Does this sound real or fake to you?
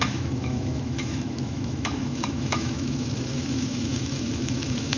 fake